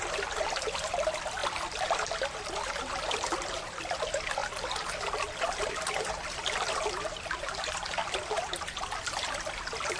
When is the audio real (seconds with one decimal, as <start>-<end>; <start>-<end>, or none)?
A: 0.0-10.0